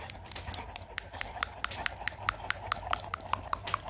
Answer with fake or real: real